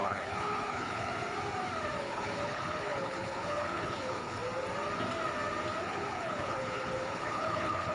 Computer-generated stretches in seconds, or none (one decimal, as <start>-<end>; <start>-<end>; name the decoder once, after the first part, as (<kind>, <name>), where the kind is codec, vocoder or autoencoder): 0.0-1.1 (codec, HILCodec); 2.0-4.4; 5.8-7.9